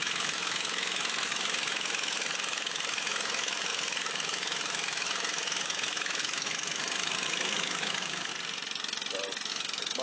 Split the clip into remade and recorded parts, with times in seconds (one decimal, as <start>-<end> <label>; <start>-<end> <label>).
0.0-8.3 remade; 8.3-9.5 recorded; 9.5-10.0 remade